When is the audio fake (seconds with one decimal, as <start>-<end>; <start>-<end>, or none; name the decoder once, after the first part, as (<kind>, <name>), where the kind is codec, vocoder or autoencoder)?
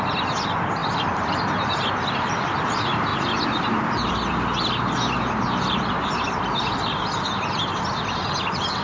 none